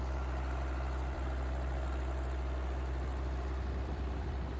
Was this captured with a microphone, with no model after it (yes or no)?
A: no